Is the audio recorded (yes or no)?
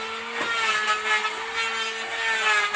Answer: yes